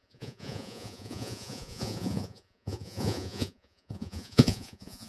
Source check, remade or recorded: remade